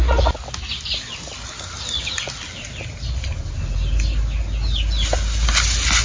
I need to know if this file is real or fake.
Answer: real